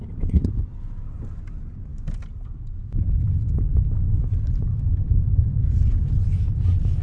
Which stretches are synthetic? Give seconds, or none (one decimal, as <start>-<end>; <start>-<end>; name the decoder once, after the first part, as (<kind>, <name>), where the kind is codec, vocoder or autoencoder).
1.9-6.1 (vocoder, BigVGAN v2)